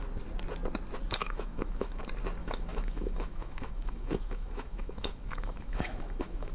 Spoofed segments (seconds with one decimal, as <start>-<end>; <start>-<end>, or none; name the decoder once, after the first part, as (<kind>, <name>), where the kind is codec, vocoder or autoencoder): 1.2-2.0 (autoencoder, DAC-VAE); 2.4-6.5